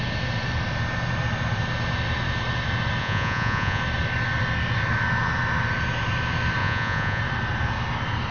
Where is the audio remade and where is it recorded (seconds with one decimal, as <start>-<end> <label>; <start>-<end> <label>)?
0.0-3.0 recorded; 3.0-3.8 remade; 3.8-6.6 recorded; 6.6-7.2 remade; 7.2-8.3 recorded

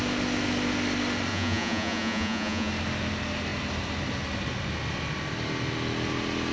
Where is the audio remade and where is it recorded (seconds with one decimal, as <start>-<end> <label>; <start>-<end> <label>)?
0.0-1.3 recorded; 1.3-2.7 remade; 2.7-6.5 recorded

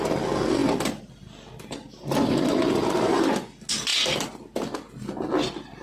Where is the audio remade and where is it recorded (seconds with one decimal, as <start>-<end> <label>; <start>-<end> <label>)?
0.0-0.6 recorded; 0.6-3.3 remade; 3.3-5.8 recorded

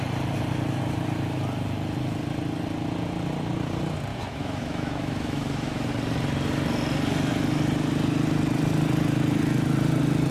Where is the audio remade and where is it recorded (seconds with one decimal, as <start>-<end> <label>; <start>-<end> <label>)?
0.0-4.1 recorded; 4.1-5.9 remade; 5.9-10.3 recorded

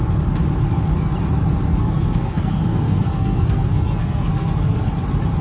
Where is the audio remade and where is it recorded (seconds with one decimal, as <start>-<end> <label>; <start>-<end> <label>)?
0.0-1.7 recorded; 1.7-4.9 remade; 4.9-5.4 recorded

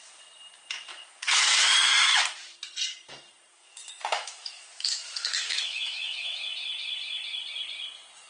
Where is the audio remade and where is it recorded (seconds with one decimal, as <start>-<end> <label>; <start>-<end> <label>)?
0.0-0.9 recorded; 0.9-2.2 remade; 2.2-3.5 recorded; 3.5-6.4 remade; 6.4-8.3 recorded

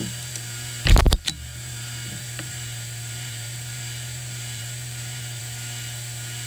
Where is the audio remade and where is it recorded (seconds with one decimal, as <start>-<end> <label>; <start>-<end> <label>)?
0.0-1.0 remade; 1.0-1.5 recorded; 1.5-5.4 remade; 5.4-6.5 recorded